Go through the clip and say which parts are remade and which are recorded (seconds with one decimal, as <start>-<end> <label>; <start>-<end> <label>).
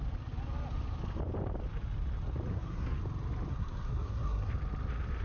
0.0-2.5 recorded; 2.5-3.0 remade; 3.0-3.5 recorded; 3.5-4.5 remade; 4.5-5.2 recorded